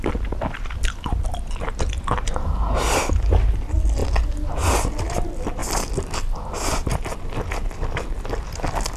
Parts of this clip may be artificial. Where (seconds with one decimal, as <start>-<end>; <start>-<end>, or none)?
none